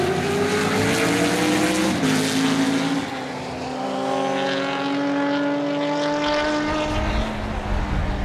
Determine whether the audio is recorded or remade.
recorded